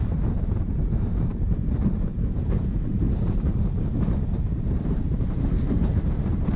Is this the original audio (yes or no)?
no